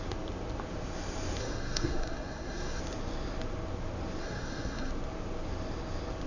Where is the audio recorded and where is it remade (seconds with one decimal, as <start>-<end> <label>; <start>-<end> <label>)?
0.0-1.4 recorded; 1.4-2.8 remade; 2.8-4.2 recorded; 4.2-4.9 remade; 4.9-6.3 recorded